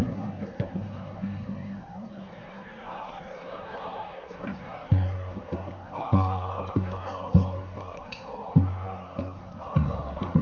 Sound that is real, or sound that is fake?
fake